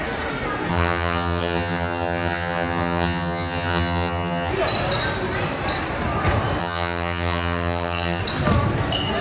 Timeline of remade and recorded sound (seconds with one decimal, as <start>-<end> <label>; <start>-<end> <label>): 0.0-0.7 recorded; 0.7-4.5 remade; 4.5-6.6 recorded; 6.6-8.2 remade; 8.2-9.2 recorded